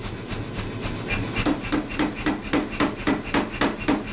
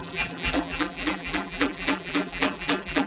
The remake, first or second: second